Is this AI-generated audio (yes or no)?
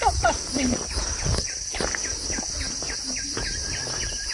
no